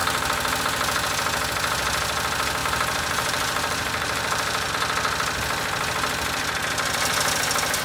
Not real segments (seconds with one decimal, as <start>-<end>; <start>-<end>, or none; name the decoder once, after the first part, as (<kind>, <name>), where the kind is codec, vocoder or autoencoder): 2.6-4.7 (vocoder, BigVGAN v2)